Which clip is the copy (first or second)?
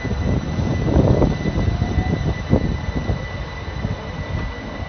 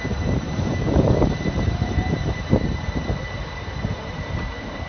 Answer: second